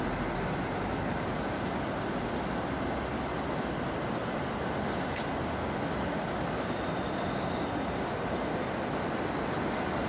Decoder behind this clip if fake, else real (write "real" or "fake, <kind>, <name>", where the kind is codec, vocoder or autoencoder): real